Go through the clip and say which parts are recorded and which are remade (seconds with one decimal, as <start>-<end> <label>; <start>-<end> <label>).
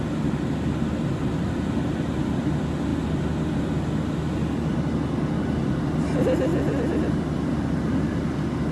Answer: 0.0-8.7 recorded